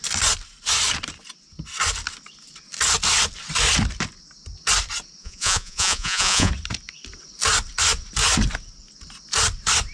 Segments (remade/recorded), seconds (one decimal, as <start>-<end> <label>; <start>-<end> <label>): 0.0-5.2 recorded; 5.2-6.5 remade; 6.5-9.9 recorded